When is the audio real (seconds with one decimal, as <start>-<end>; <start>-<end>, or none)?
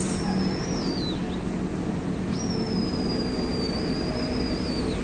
0.0-5.0